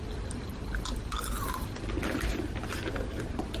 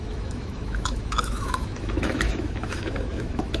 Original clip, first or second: first